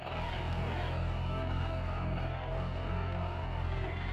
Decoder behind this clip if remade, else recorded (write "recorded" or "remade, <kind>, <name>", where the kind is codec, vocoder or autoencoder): remade, codec, DAC